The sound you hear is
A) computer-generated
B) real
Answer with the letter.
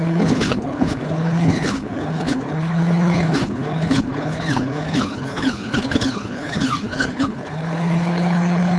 A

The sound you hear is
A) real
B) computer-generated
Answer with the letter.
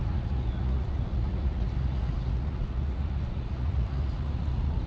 B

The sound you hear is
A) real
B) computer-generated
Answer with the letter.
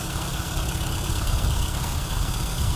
B